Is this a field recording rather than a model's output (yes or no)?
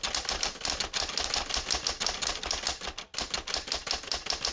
yes